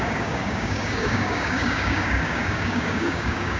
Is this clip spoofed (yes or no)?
yes